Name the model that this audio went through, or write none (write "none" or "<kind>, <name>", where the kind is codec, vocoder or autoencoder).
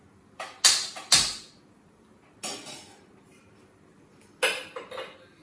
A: none